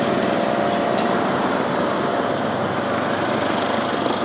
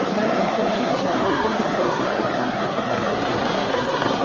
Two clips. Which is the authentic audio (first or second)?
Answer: first